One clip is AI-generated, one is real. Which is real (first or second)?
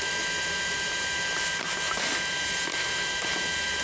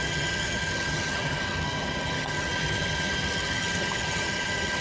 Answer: first